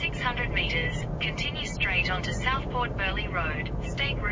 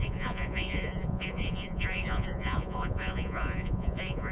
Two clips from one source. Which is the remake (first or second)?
second